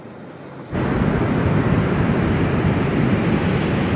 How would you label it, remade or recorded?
recorded